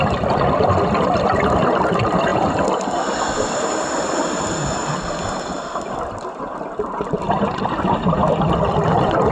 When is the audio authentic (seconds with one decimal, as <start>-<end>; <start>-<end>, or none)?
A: 0.0-9.3